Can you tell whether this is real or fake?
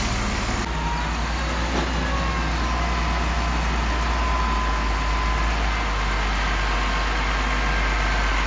real